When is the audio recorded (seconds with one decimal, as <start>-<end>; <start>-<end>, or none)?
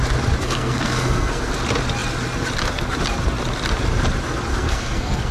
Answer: 0.0-0.4; 1.5-4.5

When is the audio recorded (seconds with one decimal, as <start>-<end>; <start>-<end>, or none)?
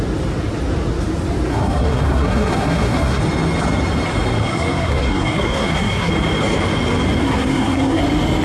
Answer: 0.0-1.5; 3.2-4.4; 6.1-7.2; 8.0-8.4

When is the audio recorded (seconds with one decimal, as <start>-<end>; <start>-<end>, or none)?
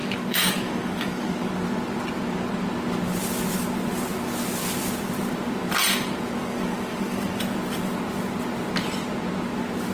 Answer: 1.5-6.4; 7.4-9.9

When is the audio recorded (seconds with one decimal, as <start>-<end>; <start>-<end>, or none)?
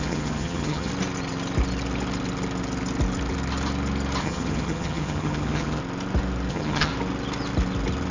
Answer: 0.9-4.2; 5.8-6.5; 6.9-8.1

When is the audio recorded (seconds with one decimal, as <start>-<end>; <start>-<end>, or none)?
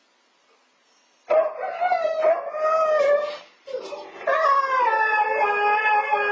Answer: 0.0-6.3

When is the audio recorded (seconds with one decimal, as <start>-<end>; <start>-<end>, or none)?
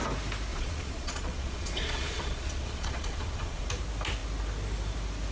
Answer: 0.0-0.5; 3.7-5.3